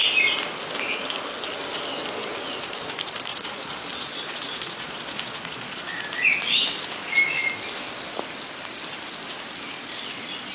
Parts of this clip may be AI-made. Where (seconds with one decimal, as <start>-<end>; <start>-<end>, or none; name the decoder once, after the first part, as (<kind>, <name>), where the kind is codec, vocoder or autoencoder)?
3.3-6.0 (vocoder, Vocos)